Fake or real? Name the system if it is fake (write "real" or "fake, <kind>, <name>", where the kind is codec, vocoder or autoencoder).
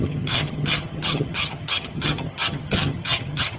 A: fake, vocoder, HiFi-GAN